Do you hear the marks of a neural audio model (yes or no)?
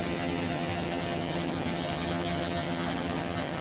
yes